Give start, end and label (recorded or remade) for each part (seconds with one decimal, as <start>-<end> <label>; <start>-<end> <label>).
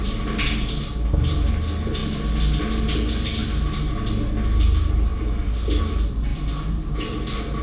0.0-2.0 recorded; 2.0-2.6 remade; 2.6-5.1 recorded; 5.1-5.8 remade; 5.8-6.3 recorded; 6.3-6.9 remade; 6.9-7.6 recorded